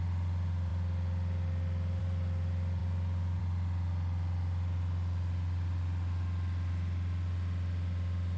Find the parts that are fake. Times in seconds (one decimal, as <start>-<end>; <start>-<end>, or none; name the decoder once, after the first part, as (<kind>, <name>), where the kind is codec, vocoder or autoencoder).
none